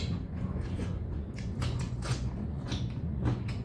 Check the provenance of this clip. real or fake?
fake